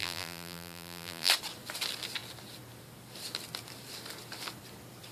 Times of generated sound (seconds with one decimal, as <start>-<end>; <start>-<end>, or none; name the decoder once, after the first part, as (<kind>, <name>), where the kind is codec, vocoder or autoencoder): 0.0-1.3 (vocoder, BigVGAN v2)